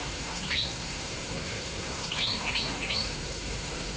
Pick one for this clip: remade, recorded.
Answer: remade